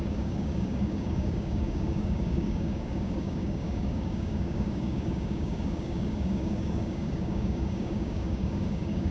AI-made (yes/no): yes